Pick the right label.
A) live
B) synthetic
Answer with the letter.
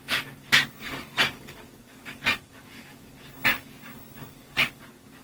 B